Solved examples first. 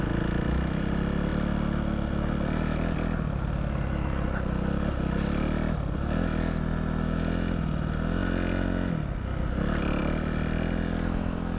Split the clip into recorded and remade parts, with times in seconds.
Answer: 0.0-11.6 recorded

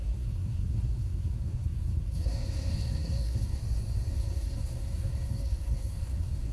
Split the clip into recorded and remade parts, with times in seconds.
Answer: 0.0-3.6 remade; 3.6-4.1 recorded; 4.1-6.5 remade

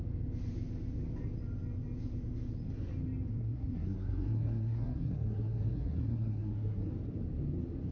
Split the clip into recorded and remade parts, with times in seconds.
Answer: 0.0-3.3 recorded; 3.3-6.9 remade; 6.9-7.9 recorded

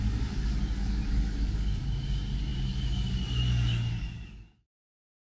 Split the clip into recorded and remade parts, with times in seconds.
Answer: 0.0-5.3 remade

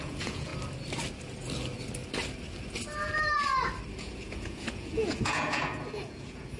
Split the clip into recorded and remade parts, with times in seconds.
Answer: 0.0-0.5 remade; 0.5-4.0 recorded; 4.0-6.6 remade

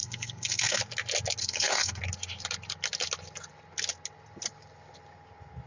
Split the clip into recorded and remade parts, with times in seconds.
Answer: 0.0-0.8 remade; 0.8-1.4 recorded; 1.4-2.0 remade; 2.0-5.7 recorded